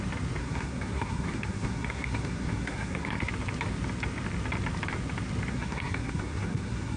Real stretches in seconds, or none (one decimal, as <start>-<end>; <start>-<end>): 0.0-0.4; 3.3-5.5